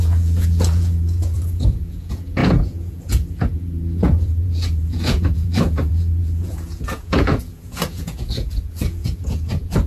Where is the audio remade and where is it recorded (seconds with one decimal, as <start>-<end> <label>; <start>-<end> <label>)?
0.0-9.9 remade